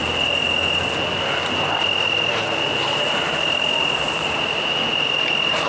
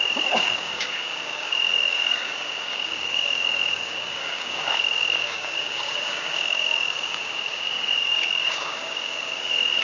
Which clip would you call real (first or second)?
first